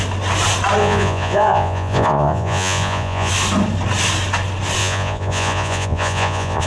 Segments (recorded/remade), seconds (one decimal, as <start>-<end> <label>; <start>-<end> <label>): 0.0-0.8 recorded; 0.8-3.3 remade; 3.3-4.8 recorded; 4.8-6.7 remade